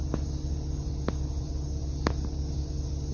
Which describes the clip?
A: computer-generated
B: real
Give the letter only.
B